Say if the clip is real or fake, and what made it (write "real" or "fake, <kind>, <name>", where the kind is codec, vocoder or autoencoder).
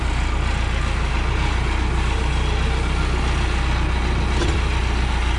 real